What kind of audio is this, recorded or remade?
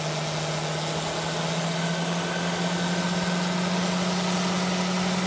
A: recorded